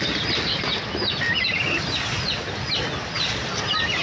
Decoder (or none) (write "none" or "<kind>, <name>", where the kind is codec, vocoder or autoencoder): none